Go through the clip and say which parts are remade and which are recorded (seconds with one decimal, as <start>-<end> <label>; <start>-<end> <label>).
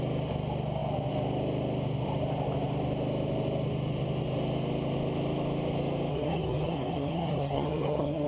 0.0-6.1 recorded; 6.1-8.3 remade